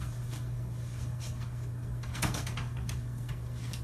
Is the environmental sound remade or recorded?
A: remade